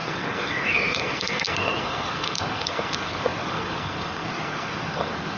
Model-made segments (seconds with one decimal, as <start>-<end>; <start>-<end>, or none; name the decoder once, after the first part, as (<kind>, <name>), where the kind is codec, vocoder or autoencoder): 0.0-5.4 (codec, SNAC)